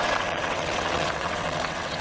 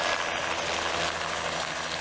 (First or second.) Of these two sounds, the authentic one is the second